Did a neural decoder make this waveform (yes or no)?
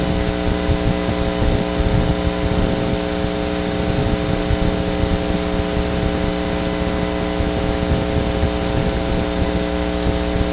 no